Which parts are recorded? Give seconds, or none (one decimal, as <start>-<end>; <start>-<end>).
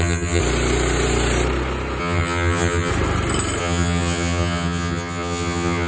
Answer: 0.4-2.0; 2.9-3.6